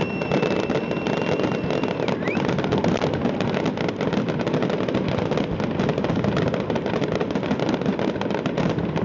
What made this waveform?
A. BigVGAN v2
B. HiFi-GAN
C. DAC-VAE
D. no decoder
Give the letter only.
D